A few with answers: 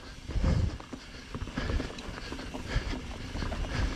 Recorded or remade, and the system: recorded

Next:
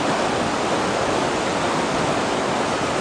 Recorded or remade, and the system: remade, vocoder, BigVGAN v2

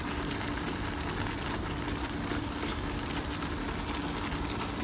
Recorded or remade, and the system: recorded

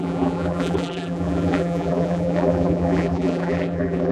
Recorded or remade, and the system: remade, vocoder, BigVGAN v2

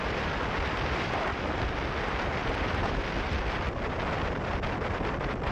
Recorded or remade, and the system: remade, vocoder, BigVGAN v2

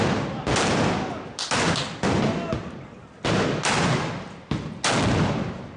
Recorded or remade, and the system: recorded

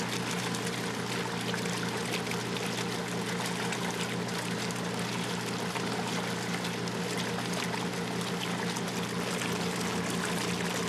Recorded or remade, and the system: recorded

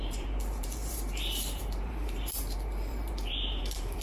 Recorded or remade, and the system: remade, vocoder, BigVGAN v2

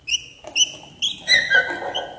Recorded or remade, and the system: recorded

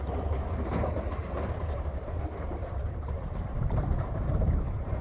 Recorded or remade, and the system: remade, vocoder, BigVGAN v2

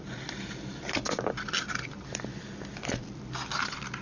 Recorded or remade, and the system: recorded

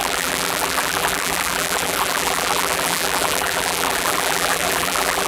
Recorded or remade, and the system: remade, vocoder, BigVGAN v2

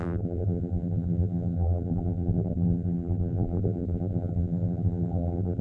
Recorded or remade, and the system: remade, vocoder, BigVGAN v2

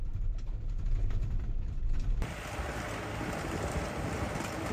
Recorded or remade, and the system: recorded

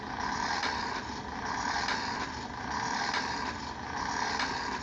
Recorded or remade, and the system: recorded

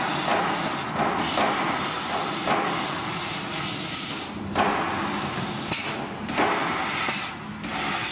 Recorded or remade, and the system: recorded